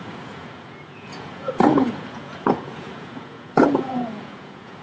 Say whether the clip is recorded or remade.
remade